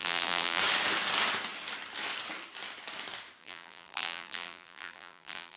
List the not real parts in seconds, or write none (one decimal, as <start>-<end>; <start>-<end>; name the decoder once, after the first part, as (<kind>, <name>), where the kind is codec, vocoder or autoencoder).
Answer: 0.0-0.6 (vocoder, BigVGAN v2); 3.4-5.6